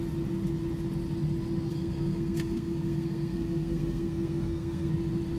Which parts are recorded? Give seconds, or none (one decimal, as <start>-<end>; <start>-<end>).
0.0-1.7; 4.9-5.4